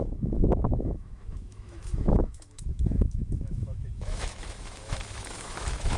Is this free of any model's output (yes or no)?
no